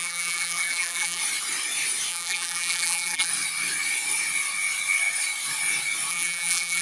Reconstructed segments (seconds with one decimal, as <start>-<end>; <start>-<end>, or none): 0.0-1.2; 2.1-3.3; 6.1-6.8